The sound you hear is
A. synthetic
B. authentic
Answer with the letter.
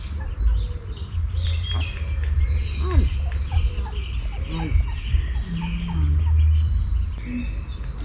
B